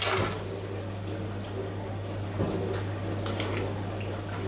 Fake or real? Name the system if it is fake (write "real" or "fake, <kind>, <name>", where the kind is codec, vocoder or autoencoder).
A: real